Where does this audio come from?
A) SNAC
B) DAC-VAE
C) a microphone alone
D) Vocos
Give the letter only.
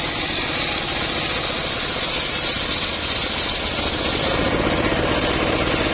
C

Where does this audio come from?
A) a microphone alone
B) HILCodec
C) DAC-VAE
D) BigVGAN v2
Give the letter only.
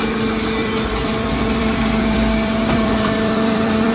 D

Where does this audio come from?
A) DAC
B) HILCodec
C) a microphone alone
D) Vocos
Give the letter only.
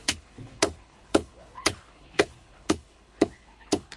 B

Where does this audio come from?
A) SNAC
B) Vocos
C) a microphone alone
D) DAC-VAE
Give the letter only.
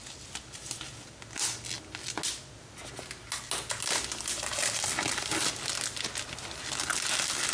C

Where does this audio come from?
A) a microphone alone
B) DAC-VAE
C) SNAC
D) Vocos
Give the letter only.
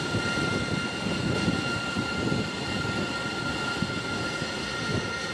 A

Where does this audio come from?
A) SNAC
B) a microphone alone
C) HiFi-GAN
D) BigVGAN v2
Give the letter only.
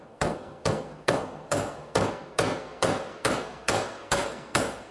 A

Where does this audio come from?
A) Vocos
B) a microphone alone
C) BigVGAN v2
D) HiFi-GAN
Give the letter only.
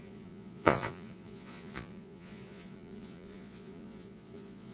A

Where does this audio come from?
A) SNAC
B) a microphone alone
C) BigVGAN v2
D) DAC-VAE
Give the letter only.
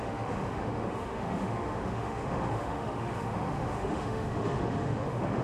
D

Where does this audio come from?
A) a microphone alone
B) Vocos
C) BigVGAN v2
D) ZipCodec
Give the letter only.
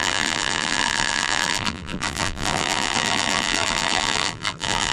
C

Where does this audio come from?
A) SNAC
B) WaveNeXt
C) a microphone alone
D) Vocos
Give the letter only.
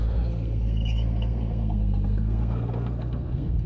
A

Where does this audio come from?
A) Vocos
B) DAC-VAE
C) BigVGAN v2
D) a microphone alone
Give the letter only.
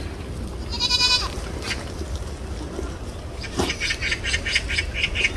D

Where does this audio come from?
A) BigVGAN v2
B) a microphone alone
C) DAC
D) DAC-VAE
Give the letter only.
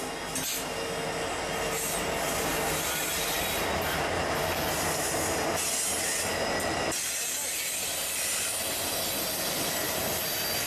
B